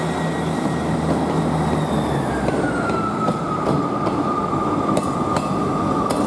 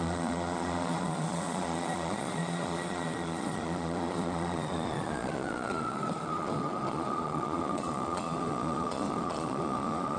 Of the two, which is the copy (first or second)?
second